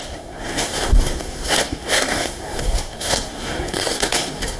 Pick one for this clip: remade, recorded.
remade